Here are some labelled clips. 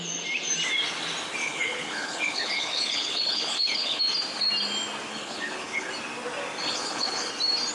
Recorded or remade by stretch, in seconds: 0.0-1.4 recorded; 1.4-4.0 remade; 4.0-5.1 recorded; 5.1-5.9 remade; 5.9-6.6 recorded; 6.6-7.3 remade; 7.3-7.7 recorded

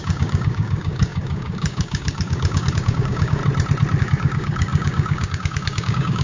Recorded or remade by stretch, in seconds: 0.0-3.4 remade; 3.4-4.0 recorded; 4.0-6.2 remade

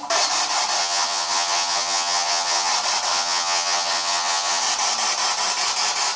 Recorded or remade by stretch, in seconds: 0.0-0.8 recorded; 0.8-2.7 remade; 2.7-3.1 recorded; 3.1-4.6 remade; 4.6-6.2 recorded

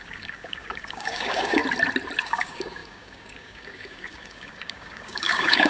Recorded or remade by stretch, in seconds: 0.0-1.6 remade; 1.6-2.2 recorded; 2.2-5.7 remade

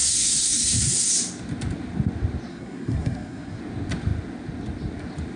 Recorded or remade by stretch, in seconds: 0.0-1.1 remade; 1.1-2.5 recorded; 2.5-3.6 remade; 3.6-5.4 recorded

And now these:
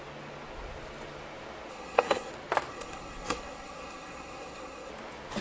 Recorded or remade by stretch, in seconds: 0.0-1.7 recorded; 1.7-2.3 remade; 2.3-2.7 recorded; 2.7-4.9 remade; 4.9-5.4 recorded